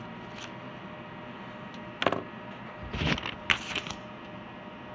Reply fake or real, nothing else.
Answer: real